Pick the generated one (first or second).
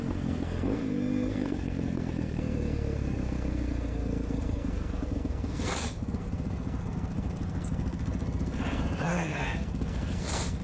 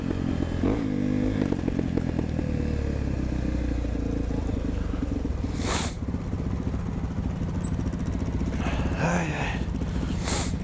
first